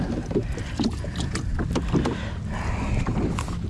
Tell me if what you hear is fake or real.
real